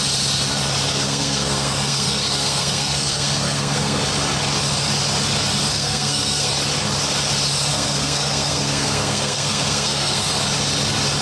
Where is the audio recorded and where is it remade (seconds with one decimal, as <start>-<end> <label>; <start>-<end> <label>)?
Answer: 0.0-0.9 recorded; 0.9-4.0 remade; 4.0-5.7 recorded; 5.7-6.5 remade; 6.5-7.7 recorded; 7.7-10.3 remade; 10.3-11.2 recorded